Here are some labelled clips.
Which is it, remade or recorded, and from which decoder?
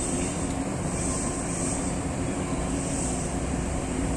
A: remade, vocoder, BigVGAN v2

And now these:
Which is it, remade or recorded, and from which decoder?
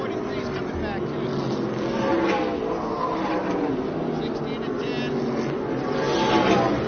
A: recorded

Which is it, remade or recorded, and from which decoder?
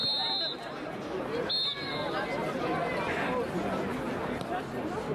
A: recorded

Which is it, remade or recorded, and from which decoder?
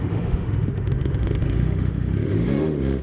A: remade, autoencoder, DAC-VAE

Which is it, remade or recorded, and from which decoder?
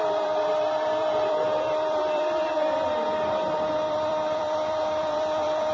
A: remade, vocoder, BigVGAN v2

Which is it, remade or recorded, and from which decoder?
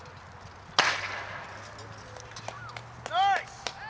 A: recorded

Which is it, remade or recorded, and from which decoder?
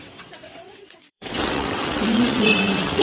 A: remade, vocoder, WaveNeXt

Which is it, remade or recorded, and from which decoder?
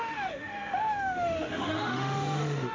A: remade, autoencoder, DAC-VAE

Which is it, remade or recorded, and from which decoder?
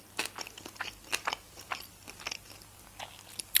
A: recorded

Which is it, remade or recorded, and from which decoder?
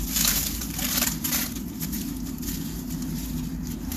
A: remade, vocoder, BigVGAN v2